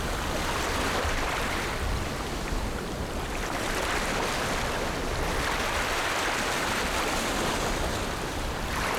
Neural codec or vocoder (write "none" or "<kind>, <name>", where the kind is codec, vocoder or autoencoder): none